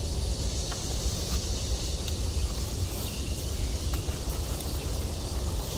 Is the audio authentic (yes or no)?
no